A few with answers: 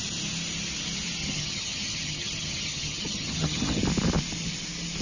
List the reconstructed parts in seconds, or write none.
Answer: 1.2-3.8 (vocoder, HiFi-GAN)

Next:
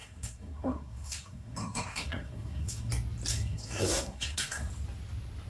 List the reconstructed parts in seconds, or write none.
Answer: 0.0-2.9 (codec, SNAC); 3.3-4.7

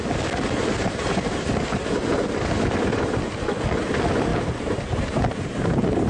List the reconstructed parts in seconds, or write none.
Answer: 4.3-6.1 (vocoder, BigVGAN v2)

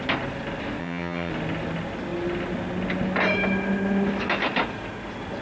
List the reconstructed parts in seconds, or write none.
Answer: 0.8-1.3 (vocoder, HiFi-GAN)